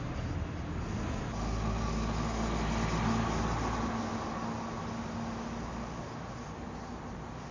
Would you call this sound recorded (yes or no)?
yes